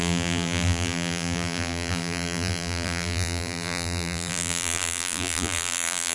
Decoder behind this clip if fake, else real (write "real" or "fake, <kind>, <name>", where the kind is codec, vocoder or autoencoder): fake, vocoder, BigVGAN v2